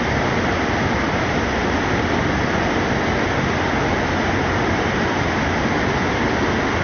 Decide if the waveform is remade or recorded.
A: recorded